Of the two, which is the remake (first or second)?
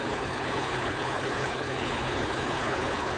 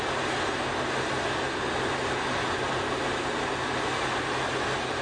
first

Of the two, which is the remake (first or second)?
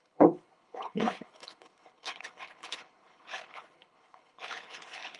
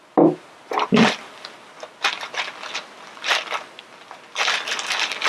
first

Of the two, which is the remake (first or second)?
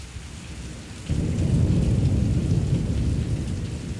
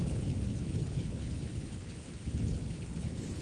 second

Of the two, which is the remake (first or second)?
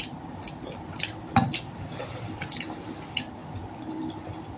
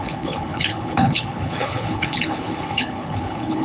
second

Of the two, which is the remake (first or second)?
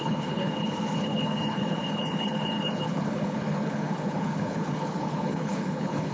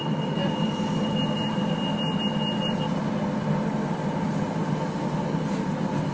first